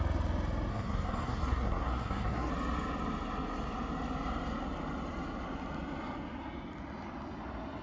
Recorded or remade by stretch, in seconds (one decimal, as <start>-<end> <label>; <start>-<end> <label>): 0.0-0.7 recorded; 0.7-2.5 remade; 2.5-7.8 recorded